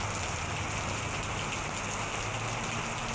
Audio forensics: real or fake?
real